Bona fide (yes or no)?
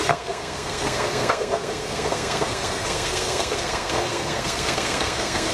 no